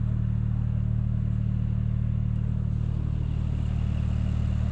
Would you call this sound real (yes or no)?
yes